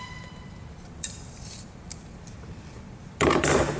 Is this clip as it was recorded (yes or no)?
no